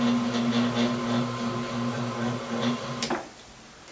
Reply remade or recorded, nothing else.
recorded